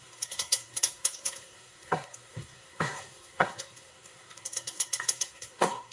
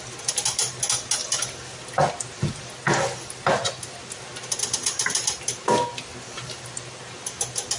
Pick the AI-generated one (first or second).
first